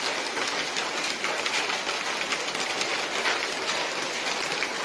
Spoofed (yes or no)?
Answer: no